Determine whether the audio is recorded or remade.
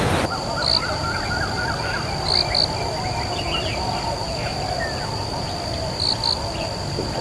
recorded